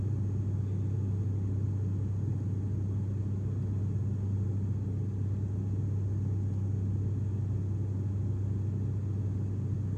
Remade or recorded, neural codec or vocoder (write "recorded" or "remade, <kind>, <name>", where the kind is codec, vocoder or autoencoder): recorded